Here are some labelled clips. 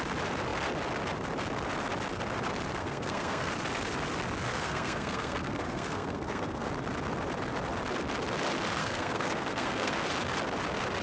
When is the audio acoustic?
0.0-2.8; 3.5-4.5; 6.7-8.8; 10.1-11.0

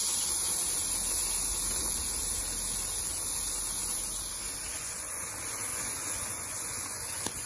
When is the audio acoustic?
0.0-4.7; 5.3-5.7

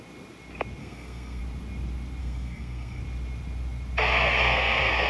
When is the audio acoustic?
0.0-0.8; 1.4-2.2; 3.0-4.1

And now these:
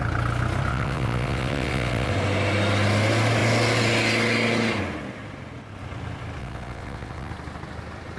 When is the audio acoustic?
0.0-0.7; 2.1-6.4; 7.3-8.2